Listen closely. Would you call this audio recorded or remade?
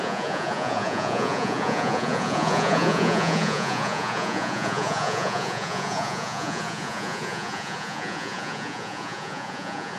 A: remade